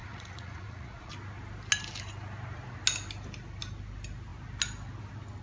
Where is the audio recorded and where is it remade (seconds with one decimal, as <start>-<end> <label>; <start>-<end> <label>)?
0.0-1.1 remade; 1.1-5.4 recorded